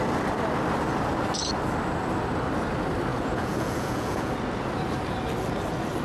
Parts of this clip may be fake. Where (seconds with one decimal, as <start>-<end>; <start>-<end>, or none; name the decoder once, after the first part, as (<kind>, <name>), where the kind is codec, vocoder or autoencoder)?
3.1-4.3 (vocoder, Vocos)

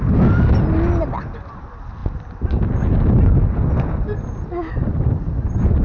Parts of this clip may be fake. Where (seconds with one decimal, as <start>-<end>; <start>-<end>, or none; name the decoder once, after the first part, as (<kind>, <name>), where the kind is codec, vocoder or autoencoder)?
none

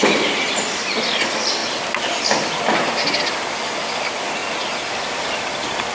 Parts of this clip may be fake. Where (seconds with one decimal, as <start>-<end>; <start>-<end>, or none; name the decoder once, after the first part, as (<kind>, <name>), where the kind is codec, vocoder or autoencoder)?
0.0-1.6 (vocoder, BigVGAN v2); 3.9-4.4; 5.1-5.9

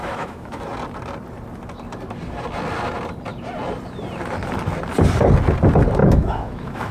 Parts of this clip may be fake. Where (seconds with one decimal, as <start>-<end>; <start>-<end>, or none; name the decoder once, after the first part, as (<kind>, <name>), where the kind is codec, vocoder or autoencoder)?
0.0-0.6 (autoencoder, DAC-VAE); 6.0-6.9

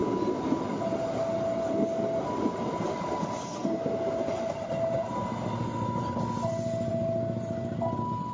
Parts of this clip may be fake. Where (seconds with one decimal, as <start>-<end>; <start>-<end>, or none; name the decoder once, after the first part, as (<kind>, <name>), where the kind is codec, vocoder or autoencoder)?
none

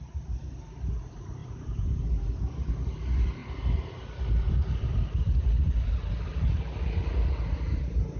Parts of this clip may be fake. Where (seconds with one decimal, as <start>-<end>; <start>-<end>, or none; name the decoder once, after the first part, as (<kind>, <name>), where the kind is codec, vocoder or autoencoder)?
1.4-2.0 (vocoder, BigVGAN v2); 3.4-6.0

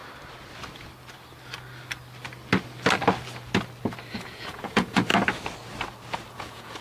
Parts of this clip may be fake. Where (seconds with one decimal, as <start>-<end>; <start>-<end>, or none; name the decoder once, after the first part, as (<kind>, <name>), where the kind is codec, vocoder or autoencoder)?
4.1-5.1 (vocoder, Vocos); 6.3-6.8

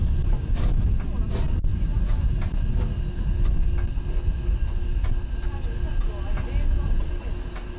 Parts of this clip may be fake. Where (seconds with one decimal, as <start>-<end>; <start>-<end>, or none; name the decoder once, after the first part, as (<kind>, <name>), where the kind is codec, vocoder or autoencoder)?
none